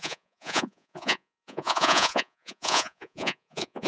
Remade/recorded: remade